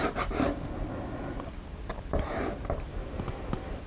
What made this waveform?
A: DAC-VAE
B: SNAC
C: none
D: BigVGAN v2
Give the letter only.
C